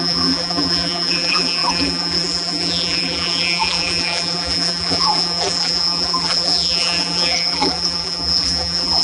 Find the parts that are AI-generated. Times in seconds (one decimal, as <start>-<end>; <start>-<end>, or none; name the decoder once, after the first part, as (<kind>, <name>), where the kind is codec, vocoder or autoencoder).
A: 0.0-9.0 (vocoder, BigVGAN v2)